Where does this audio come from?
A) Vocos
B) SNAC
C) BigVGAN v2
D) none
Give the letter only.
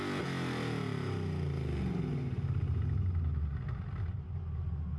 D